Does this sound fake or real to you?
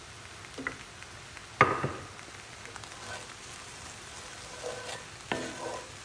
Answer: real